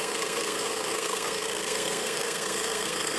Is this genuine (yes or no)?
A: no